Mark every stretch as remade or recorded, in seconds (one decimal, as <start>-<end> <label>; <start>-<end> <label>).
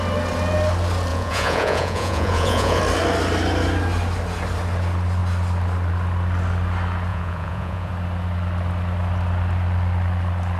0.0-1.1 recorded; 1.1-2.8 remade; 2.8-7.1 recorded; 7.1-7.9 remade; 7.9-10.6 recorded